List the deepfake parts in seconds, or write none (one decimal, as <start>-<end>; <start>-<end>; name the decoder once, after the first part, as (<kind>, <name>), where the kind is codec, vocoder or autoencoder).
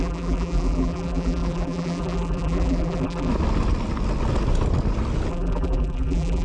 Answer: 0.0-3.3 (vocoder, BigVGAN v2); 5.3-6.4